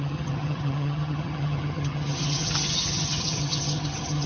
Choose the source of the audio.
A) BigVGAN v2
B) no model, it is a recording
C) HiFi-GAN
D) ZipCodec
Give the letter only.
C